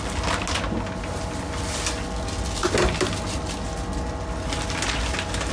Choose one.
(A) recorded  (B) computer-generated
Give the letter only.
A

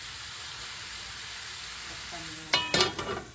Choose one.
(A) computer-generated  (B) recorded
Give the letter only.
B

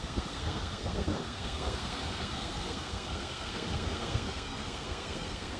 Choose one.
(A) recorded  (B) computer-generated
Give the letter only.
B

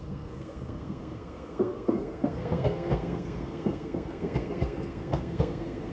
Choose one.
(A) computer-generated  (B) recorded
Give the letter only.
A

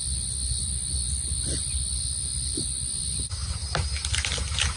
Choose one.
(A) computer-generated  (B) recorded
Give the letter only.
B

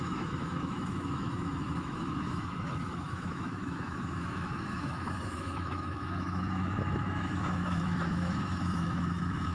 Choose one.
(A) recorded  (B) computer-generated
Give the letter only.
B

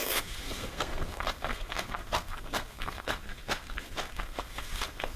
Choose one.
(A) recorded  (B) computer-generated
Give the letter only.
B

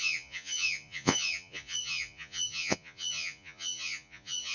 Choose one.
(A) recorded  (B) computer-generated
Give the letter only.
B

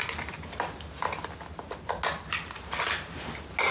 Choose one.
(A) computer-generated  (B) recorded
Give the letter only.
B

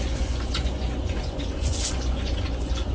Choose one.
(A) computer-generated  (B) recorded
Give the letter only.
A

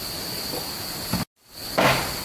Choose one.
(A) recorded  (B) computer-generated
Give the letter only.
A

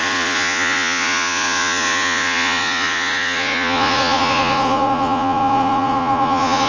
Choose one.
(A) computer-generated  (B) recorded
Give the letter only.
A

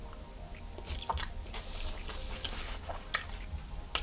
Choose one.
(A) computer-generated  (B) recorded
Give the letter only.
B